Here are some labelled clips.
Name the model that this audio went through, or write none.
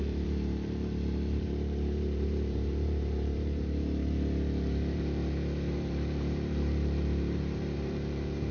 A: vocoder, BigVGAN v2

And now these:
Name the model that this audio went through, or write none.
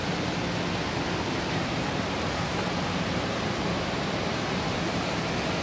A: none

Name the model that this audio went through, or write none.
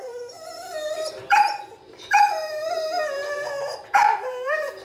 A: vocoder, BigVGAN v2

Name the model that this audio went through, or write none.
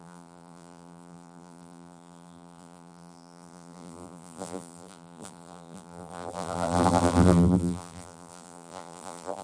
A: vocoder, BigVGAN v2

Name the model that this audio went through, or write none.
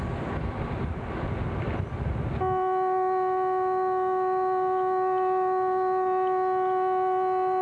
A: none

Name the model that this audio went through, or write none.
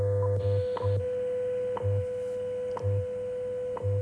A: none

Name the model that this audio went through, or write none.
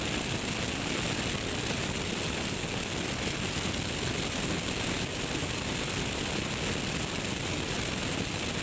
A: none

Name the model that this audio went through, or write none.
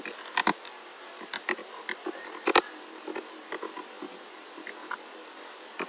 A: vocoder, BigVGAN v2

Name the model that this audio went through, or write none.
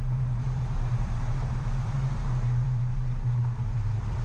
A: vocoder, BigVGAN v2